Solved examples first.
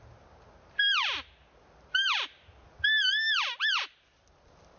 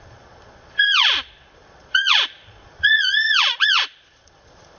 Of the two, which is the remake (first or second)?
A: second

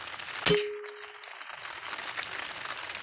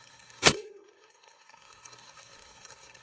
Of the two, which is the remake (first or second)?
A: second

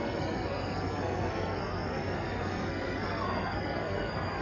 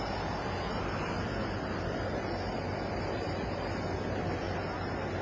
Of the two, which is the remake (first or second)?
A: first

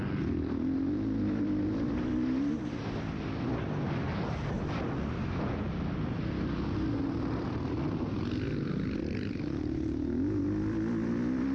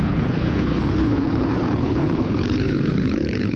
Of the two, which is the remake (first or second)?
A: second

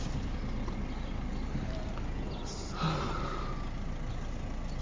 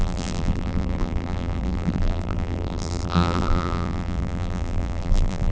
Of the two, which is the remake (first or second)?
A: second